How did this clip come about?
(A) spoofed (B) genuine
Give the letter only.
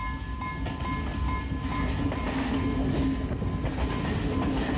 B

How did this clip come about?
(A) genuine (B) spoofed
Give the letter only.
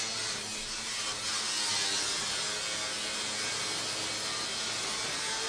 A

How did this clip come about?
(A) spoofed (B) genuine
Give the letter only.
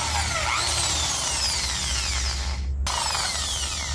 B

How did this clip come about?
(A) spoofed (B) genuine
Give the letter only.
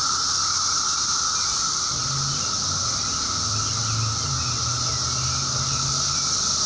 B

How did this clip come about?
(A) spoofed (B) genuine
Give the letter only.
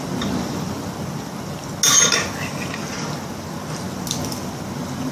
B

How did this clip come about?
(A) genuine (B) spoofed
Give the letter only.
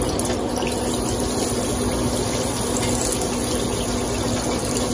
A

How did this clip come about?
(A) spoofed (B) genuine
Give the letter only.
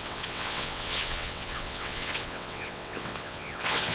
A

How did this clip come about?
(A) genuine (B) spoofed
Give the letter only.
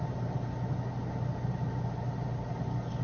A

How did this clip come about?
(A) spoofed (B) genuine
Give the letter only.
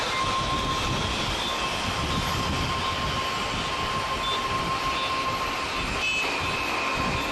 B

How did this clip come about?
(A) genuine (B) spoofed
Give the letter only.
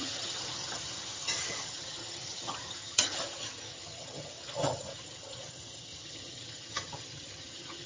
B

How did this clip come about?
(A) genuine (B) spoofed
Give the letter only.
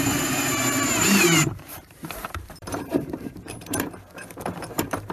B